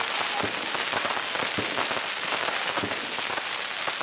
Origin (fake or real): real